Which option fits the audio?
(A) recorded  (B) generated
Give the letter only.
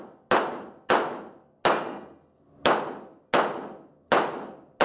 A